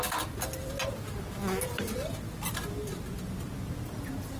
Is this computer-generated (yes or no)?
no